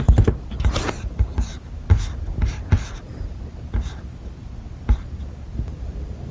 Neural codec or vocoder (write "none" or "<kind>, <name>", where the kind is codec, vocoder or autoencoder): none